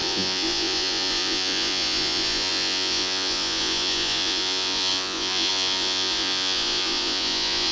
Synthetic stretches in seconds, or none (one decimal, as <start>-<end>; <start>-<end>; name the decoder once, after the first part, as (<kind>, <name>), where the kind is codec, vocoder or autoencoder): 0.0-7.7 (vocoder, Vocos)